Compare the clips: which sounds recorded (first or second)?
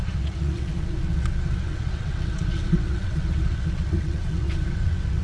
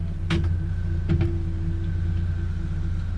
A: second